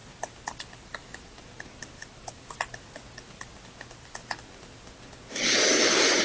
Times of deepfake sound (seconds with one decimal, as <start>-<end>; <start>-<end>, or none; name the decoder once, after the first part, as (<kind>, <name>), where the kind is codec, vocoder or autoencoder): none